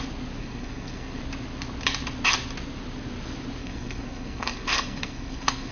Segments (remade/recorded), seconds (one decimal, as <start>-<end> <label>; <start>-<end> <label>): 0.0-0.4 recorded; 0.4-1.2 remade; 1.2-3.6 recorded; 3.6-5.7 remade